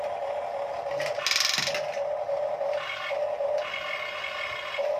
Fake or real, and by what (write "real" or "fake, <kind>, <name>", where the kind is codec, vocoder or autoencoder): real